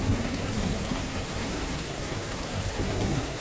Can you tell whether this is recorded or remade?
remade